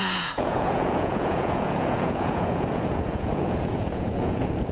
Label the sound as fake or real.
fake